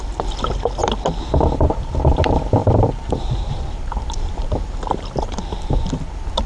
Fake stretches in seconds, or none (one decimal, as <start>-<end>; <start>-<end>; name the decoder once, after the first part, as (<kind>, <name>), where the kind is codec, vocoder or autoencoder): 2.6-5.0 (vocoder, BigVGAN v2)